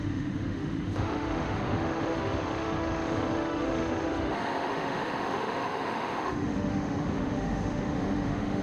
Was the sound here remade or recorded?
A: remade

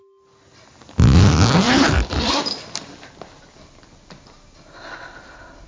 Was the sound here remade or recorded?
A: recorded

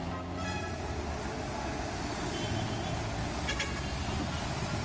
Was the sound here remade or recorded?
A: recorded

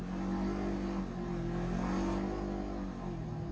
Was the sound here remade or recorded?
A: recorded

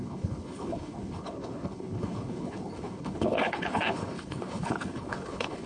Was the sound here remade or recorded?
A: remade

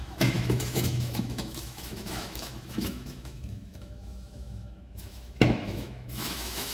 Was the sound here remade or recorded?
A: remade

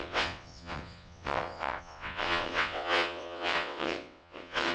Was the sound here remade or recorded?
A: remade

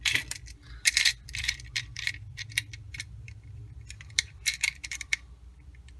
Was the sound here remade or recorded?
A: remade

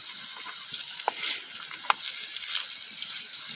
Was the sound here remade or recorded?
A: recorded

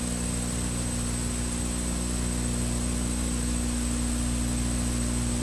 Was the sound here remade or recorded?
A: recorded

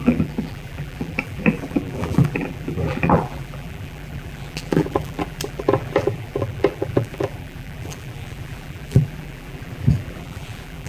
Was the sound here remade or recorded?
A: remade